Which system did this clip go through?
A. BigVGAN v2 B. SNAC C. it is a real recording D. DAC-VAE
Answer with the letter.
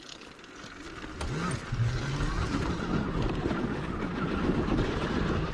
C